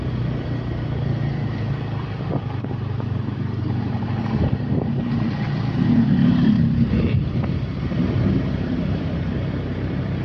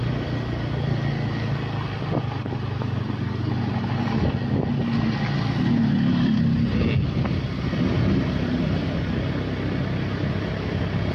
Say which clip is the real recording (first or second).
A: second